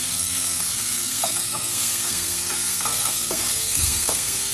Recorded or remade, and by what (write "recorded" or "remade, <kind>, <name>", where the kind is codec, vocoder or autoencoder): remade, codec, SNAC